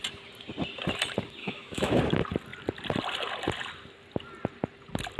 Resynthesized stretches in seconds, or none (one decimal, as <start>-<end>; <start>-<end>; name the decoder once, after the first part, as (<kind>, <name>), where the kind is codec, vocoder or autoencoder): 1.4-2.0 (autoencoder, DAC-VAE)